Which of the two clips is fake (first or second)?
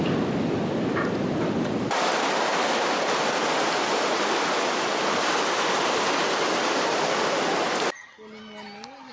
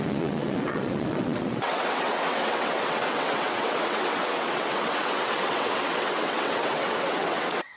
second